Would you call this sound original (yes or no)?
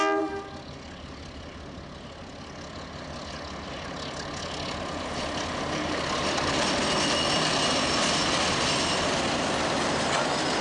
yes